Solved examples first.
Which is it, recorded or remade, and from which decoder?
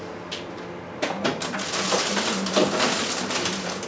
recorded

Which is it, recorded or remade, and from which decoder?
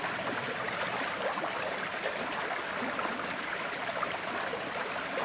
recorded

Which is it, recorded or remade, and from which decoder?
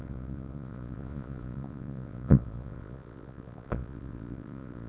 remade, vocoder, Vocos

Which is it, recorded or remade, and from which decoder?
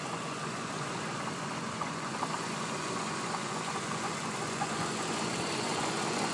remade, vocoder, Vocos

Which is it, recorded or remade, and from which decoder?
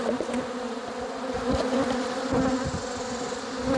recorded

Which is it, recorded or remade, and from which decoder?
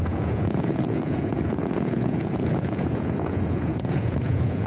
remade, vocoder, Vocos